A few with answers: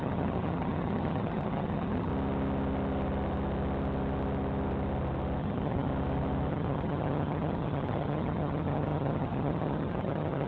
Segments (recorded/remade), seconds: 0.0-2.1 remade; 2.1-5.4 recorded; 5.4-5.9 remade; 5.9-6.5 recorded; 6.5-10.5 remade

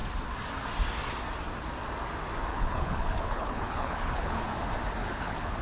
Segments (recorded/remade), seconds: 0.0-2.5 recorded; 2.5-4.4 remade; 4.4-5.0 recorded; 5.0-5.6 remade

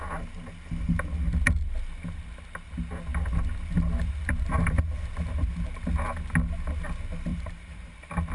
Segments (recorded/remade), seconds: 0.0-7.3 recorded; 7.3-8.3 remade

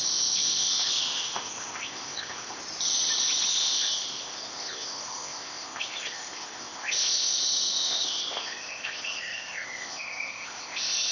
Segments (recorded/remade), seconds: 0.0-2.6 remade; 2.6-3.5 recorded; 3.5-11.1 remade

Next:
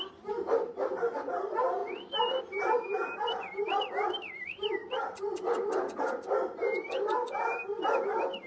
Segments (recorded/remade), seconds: 0.0-8.5 recorded